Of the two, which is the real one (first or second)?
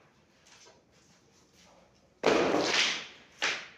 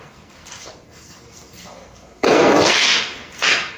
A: first